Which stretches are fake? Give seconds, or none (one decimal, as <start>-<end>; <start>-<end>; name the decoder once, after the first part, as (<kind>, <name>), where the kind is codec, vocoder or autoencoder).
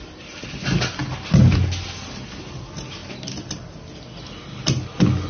none